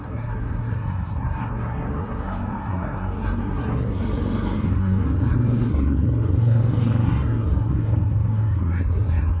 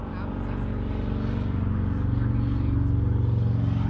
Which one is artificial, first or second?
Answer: first